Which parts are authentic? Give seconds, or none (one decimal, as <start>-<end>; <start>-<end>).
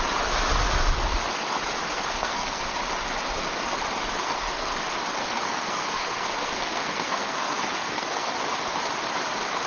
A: 0.0-1.8; 2.8-4.2; 4.7-5.2; 8.3-9.7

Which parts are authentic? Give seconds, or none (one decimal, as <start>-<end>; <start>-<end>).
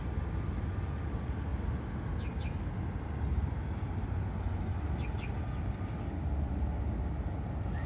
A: 0.0-7.9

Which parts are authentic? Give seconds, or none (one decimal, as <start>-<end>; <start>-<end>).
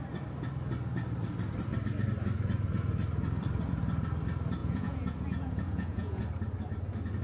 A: 0.0-4.6; 6.2-7.2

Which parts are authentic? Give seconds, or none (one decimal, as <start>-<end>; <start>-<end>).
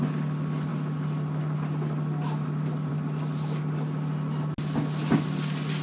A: 0.0-5.8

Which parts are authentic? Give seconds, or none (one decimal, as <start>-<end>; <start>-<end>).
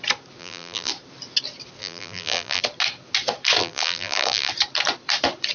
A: 0.0-0.4; 0.9-1.8; 2.6-3.6; 4.5-5.5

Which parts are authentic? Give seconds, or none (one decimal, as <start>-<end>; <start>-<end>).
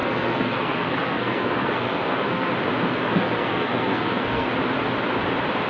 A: 2.5-2.9; 4.5-5.7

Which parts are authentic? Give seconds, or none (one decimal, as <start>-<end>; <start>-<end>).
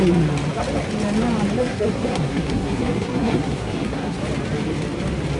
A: 0.0-1.6; 4.2-5.4